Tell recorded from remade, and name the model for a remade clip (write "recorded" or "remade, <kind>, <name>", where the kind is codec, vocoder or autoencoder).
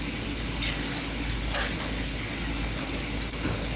recorded